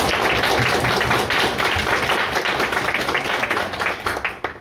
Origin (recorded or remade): recorded